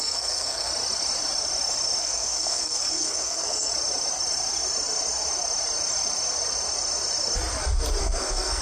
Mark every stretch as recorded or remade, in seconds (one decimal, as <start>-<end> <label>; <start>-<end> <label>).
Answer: 0.0-0.7 remade; 0.7-2.0 recorded; 2.0-3.7 remade; 3.7-8.0 recorded; 8.0-8.6 remade